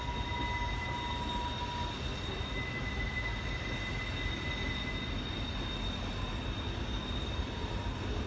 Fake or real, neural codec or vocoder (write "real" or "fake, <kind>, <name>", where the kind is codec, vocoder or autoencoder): real